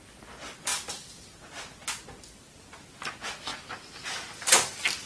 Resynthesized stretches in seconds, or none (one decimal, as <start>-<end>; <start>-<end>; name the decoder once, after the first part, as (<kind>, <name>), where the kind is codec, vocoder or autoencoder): none